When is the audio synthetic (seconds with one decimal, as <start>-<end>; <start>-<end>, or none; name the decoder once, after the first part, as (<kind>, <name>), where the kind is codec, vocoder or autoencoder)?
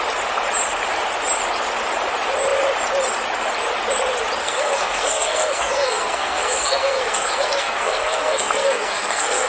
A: 4.4-9.5 (codec, SNAC)